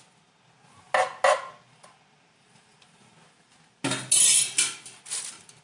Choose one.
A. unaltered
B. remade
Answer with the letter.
A